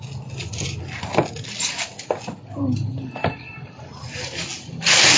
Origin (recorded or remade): recorded